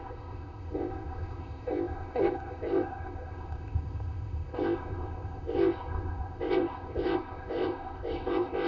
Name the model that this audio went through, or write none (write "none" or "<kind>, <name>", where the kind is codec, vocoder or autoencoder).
codec, ZipCodec